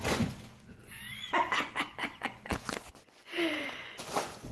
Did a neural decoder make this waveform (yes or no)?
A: yes